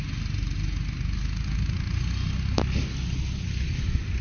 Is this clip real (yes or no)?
yes